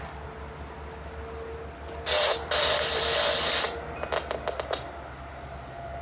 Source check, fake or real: real